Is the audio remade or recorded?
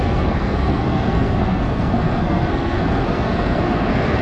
remade